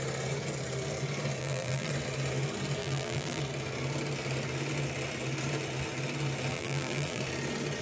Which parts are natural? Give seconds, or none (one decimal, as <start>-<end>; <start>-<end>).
0.0-1.4; 1.9-2.8; 3.4-6.5; 7.2-7.8